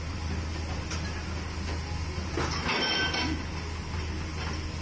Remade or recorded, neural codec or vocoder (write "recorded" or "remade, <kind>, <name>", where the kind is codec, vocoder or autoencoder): recorded